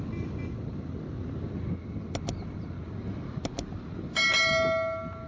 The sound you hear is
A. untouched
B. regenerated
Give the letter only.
A